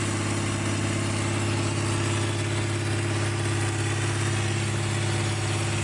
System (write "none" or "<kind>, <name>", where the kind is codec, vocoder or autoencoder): none